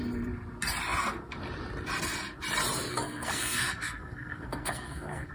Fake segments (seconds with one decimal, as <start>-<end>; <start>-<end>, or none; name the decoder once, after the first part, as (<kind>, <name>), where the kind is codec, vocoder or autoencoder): 2.9-5.3 (codec, SNAC)